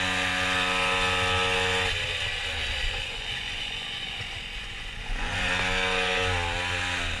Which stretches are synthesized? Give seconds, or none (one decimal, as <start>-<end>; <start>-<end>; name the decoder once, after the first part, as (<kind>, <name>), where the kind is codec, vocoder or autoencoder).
2.6-5.5 (vocoder, Vocos)